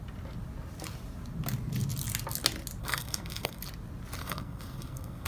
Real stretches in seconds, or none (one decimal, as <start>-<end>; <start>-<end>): 0.0-2.8; 3.6-4.2